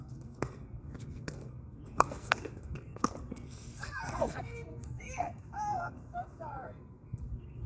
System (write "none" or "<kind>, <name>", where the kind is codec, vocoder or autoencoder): codec, SNAC